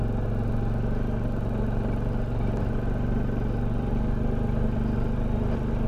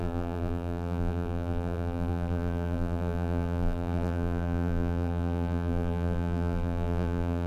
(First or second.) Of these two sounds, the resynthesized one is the second